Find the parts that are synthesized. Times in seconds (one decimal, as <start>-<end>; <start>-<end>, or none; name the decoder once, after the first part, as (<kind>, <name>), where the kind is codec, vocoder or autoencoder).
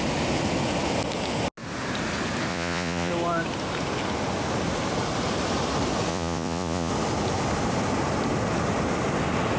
2.5-3.1 (vocoder, Vocos); 6.1-6.9